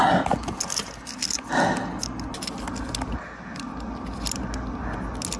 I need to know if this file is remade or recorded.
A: recorded